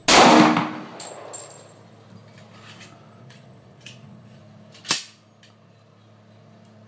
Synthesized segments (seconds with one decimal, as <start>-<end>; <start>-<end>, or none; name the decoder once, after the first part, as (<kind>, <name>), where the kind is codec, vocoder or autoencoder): 3.2-4.4 (vocoder, Vocos)